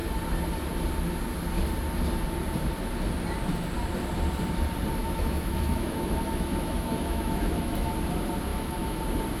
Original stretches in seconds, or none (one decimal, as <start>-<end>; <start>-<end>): 0.0-5.0; 7.9-8.5; 9.0-9.4